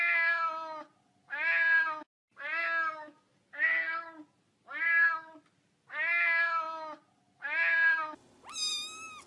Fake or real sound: real